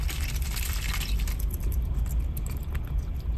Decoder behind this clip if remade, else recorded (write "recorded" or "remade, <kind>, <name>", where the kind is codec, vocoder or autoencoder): recorded